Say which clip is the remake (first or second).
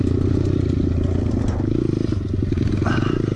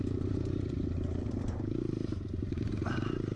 second